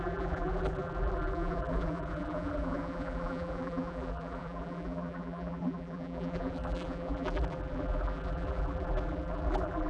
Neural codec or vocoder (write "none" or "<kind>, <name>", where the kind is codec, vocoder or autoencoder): vocoder, BigVGAN v2